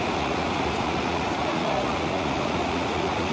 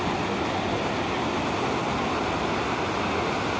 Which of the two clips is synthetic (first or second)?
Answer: first